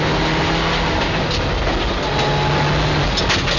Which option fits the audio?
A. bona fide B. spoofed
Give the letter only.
A